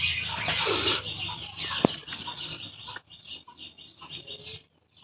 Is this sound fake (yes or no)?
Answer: no